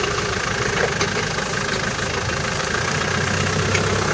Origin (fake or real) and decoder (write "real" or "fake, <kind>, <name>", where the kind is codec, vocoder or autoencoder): real